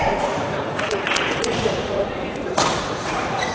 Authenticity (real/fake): fake